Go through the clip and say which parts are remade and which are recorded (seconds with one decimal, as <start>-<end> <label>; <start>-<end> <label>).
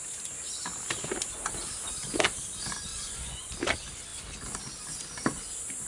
0.0-2.9 recorded; 2.9-3.5 remade; 3.5-5.9 recorded